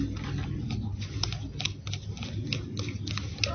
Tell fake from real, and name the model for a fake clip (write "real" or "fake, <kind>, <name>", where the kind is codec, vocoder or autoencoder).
real